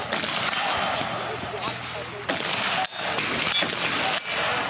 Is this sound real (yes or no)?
yes